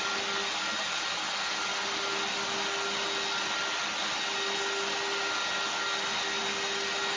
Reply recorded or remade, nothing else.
recorded